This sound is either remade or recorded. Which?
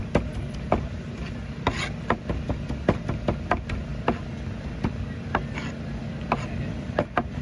recorded